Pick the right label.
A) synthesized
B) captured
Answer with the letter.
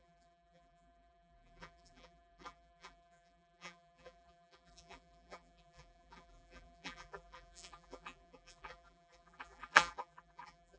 A